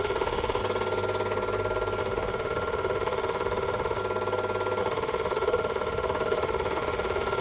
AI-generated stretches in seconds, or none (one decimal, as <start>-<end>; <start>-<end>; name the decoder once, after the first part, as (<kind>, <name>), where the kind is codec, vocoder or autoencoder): 0.0-0.6 (autoencoder, DAC-VAE); 2.0-4.0; 4.8-7.4